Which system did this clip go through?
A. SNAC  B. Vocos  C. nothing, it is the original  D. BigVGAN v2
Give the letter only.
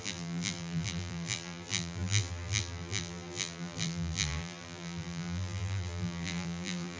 D